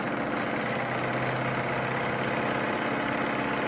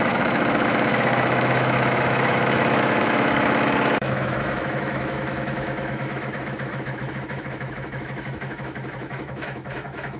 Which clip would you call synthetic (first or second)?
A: second